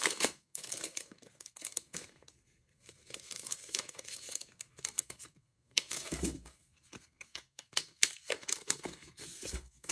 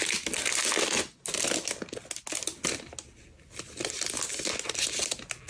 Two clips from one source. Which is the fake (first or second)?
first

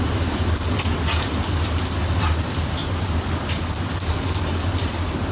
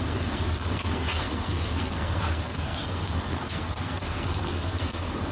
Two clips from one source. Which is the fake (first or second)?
second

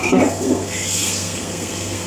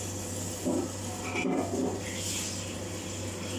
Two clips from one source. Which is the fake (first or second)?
first